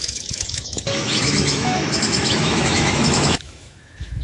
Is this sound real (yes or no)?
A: no